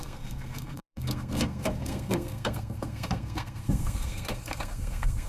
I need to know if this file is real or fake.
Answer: fake